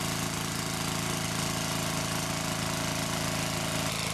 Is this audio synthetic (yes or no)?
no